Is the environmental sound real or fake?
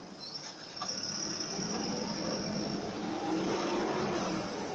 real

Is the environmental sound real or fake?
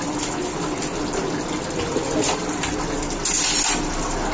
real